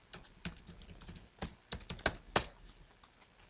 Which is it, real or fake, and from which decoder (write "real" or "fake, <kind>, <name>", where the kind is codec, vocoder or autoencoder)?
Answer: real